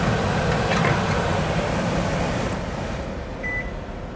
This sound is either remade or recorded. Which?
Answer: recorded